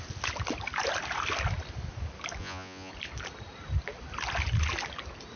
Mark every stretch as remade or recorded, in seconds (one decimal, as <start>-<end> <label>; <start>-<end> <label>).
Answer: 0.0-2.4 recorded; 2.4-2.9 remade; 2.9-5.4 recorded